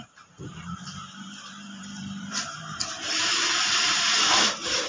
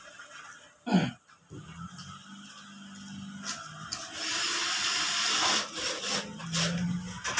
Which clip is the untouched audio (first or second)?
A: second